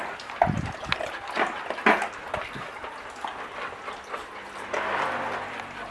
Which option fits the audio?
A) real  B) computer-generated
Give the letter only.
A